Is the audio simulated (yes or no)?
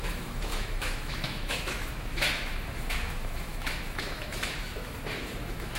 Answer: yes